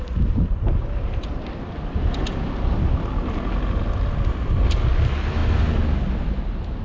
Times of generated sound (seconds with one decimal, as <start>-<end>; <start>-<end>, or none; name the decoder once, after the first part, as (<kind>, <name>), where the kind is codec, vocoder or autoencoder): none